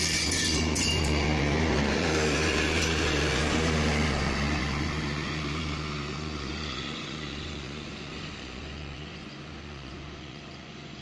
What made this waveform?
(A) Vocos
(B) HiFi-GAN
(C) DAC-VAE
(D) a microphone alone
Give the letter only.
A